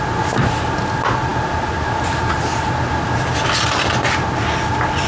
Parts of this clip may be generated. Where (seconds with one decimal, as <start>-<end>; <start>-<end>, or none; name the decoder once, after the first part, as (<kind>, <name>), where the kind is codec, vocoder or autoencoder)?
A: none